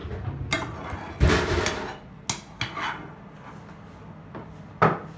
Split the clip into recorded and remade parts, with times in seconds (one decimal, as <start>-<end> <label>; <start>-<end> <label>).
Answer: 0.0-5.2 recorded